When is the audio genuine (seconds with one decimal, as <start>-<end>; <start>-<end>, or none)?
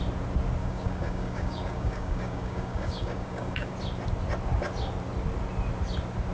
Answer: 0.0-0.6; 3.7-6.3